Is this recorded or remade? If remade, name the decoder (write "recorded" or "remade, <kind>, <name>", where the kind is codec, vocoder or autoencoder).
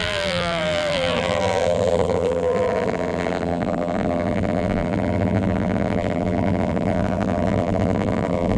remade, vocoder, BigVGAN v2